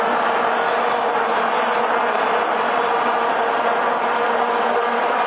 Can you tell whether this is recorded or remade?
recorded